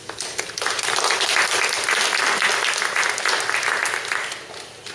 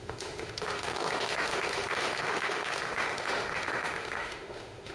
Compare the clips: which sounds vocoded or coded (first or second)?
second